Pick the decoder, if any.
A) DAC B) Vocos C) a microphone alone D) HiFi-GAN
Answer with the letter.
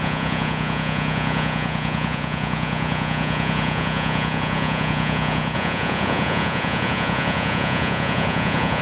B